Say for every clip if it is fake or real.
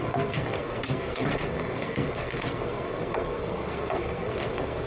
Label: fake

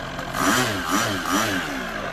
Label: real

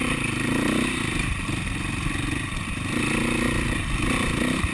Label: real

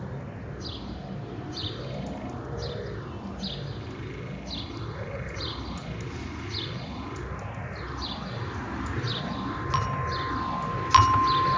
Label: real